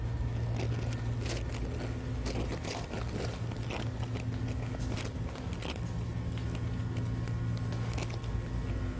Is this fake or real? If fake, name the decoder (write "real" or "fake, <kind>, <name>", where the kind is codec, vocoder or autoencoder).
real